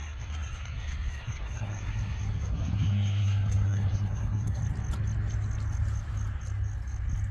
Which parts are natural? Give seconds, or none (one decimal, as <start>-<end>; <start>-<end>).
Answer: 4.6-7.3